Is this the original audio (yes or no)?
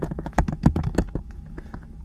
no